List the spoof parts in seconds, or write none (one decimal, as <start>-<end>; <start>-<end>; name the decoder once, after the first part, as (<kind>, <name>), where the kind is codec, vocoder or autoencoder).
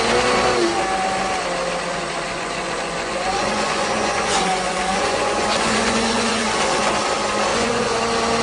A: 1.9-6.9 (vocoder, Vocos); 7.5-8.0